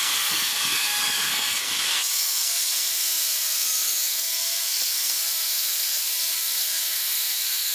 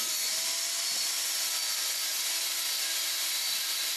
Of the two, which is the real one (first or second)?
second